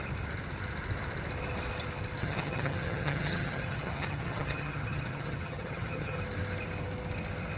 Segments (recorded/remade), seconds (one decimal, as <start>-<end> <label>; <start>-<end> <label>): 0.0-2.2 recorded; 2.2-6.2 remade; 6.2-7.6 recorded